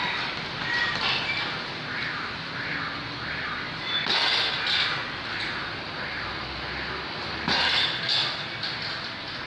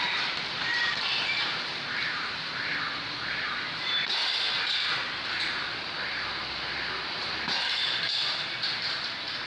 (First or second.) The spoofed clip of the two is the second